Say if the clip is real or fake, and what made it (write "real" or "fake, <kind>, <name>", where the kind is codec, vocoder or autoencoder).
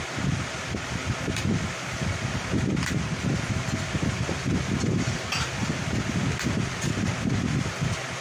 real